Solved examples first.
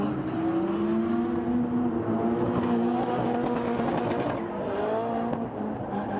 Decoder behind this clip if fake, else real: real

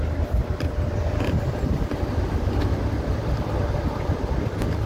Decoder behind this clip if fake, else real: real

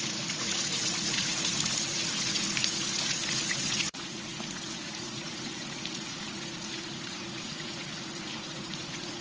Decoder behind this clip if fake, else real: fake, vocoder, Vocos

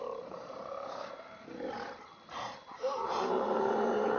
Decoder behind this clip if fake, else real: fake, vocoder, BigVGAN v2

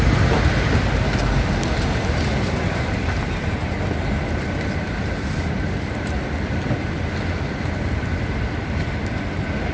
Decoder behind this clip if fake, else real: real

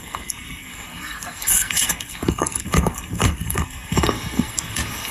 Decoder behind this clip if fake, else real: fake, codec, SNAC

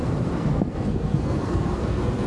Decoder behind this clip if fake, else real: fake, codec, SNAC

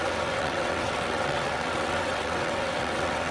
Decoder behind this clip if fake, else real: fake, vocoder, WaveNeXt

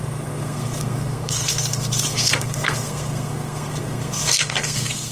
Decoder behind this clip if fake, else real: fake, codec, SNAC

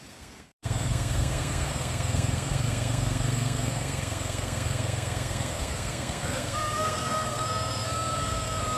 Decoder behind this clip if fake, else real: fake, codec, SNAC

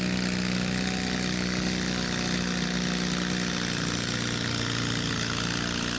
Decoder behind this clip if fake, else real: real